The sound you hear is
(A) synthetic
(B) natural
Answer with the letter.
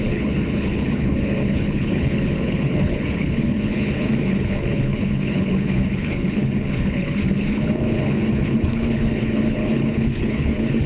A